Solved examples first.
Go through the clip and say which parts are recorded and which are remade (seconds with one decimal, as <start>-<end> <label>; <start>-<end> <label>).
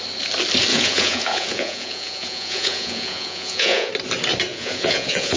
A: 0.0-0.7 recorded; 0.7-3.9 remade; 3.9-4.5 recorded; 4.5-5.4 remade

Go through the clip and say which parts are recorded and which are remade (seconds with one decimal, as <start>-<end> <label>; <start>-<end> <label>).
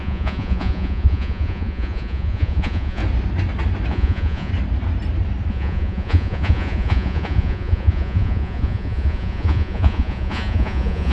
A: 0.0-3.0 remade; 3.0-3.9 recorded; 3.9-4.5 remade; 4.5-5.5 recorded; 5.5-11.1 remade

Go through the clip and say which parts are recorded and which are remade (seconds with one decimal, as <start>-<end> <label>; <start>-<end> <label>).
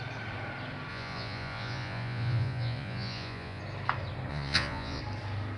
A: 0.0-0.9 recorded; 0.9-3.6 remade; 3.6-4.3 recorded; 4.3-5.0 remade; 5.0-5.6 recorded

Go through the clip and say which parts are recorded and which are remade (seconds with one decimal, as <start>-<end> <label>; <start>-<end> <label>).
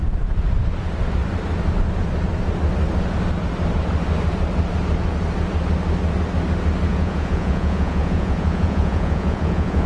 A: 0.0-6.9 recorded; 6.9-9.9 remade